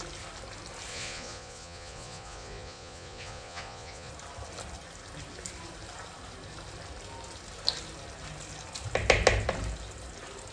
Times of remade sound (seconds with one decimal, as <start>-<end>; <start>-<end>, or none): 0.9-4.1